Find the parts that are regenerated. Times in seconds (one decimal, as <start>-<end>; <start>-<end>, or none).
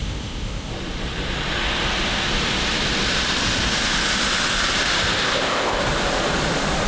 0.0-0.7; 5.2-5.8